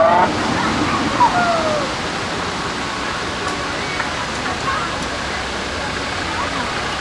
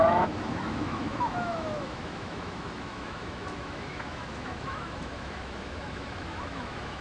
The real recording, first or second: first